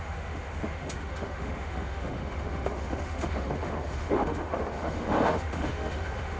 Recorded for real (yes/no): no